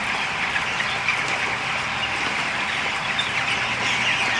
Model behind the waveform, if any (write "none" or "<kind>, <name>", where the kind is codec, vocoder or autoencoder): none